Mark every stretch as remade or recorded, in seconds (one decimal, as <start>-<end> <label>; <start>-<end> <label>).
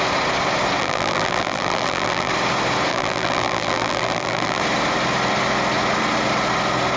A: 0.0-0.8 recorded; 0.8-2.3 remade; 2.3-2.9 recorded; 2.9-4.6 remade; 4.6-7.0 recorded